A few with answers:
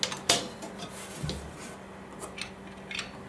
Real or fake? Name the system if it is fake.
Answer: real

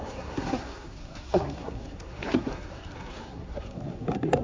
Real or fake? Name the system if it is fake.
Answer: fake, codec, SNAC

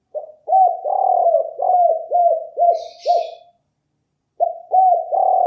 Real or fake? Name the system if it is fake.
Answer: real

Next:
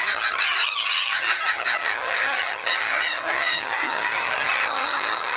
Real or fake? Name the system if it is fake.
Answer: fake, vocoder, HiFi-GAN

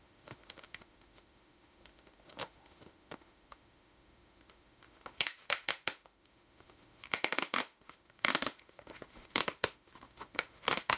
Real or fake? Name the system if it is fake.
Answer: fake, autoencoder, DAC-VAE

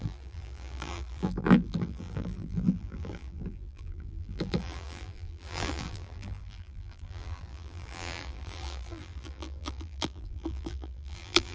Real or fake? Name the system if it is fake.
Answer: fake, vocoder, BigVGAN v2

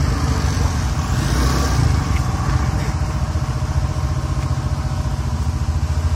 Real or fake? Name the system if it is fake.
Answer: real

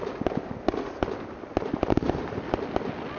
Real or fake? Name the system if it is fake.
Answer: real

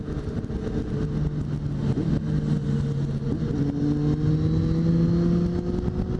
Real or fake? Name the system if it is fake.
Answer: real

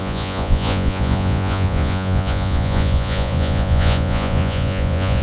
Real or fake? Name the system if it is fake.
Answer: fake, vocoder, Vocos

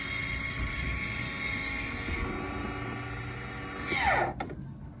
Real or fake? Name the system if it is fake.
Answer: real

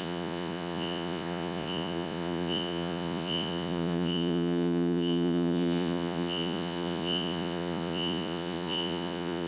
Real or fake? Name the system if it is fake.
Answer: fake, vocoder, Vocos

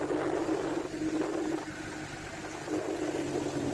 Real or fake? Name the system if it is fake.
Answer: real